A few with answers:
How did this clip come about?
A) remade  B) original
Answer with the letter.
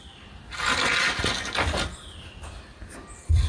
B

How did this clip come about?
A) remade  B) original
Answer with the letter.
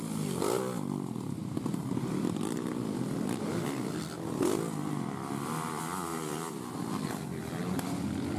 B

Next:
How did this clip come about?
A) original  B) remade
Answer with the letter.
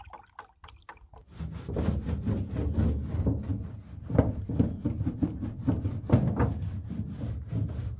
A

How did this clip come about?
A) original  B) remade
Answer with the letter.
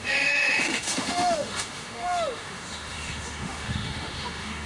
B